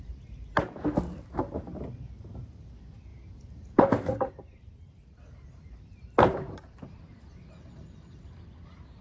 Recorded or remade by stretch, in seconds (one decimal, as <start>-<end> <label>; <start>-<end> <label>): 0.0-3.1 recorded; 3.1-7.2 remade; 7.2-9.0 recorded